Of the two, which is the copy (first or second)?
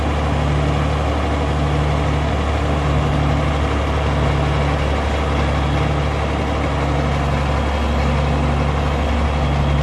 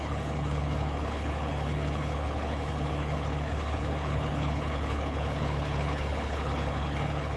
second